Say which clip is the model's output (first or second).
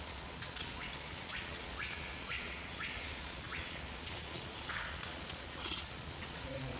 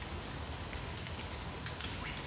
first